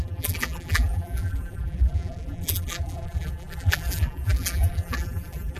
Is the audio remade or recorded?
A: remade